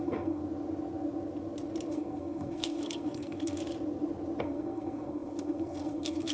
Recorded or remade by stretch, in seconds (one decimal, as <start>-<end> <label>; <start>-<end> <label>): 0.0-0.4 remade; 0.4-1.9 recorded; 1.9-3.6 remade; 3.6-4.4 recorded; 4.4-6.3 remade